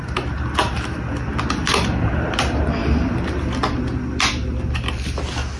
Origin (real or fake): real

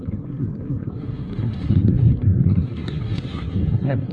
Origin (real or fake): fake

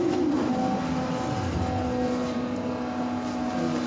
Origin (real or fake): real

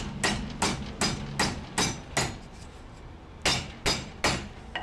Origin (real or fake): real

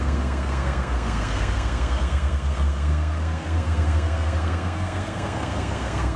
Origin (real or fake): fake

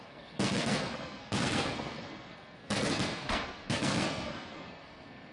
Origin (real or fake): fake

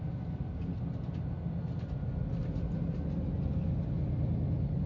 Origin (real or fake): real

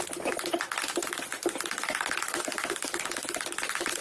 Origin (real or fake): real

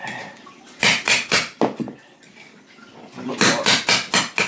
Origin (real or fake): real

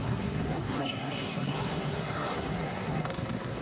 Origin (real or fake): fake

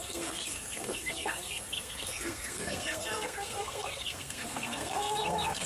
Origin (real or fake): fake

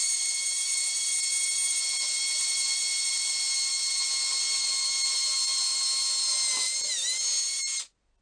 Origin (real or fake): real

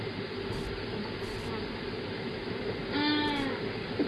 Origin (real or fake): real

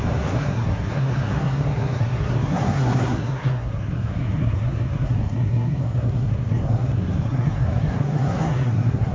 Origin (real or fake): fake